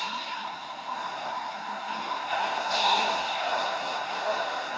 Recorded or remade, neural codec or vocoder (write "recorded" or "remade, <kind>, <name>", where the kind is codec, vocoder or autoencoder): remade, codec, SNAC